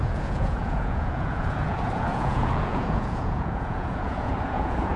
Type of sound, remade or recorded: remade